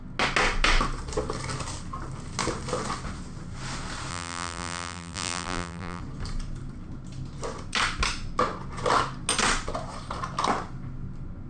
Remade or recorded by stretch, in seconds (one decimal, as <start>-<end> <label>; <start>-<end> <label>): 0.0-4.1 recorded; 4.1-6.0 remade; 6.0-11.5 recorded